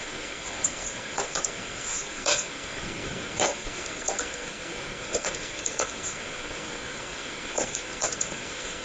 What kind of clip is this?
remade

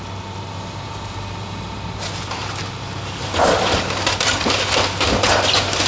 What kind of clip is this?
recorded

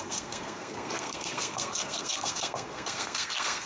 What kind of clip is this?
remade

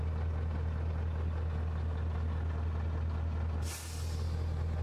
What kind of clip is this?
recorded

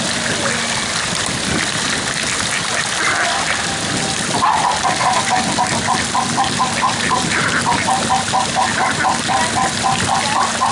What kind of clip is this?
recorded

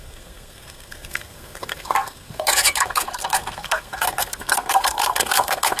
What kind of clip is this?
remade